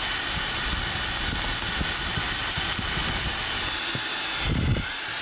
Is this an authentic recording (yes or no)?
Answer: yes